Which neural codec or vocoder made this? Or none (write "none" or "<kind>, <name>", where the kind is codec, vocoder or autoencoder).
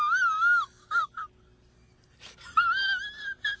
none